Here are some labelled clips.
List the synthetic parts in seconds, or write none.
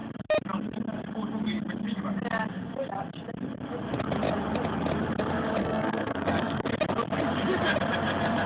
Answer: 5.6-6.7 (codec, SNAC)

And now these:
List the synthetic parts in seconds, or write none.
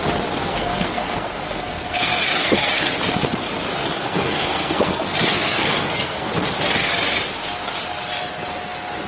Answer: 0.4-2.9 (codec, SNAC); 3.7-6.3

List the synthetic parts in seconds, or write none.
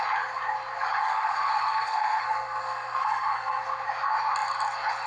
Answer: 1.0-3.6 (codec, SNAC)